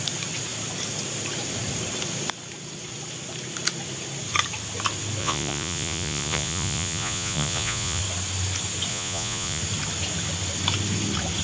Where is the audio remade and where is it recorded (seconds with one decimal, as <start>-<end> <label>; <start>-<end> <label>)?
0.0-5.2 recorded; 5.2-8.0 remade; 8.0-8.9 recorded; 8.9-9.6 remade; 9.6-11.4 recorded